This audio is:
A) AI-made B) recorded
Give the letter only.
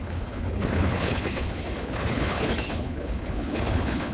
A